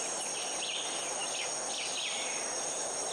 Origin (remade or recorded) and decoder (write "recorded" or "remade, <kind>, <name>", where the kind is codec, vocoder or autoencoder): recorded